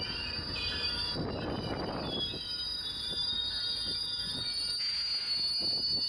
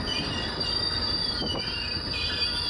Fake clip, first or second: second